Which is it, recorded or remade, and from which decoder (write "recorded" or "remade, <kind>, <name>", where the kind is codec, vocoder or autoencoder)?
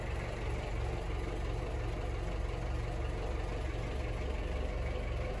recorded